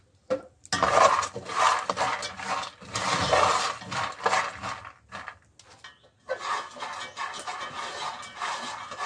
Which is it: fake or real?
real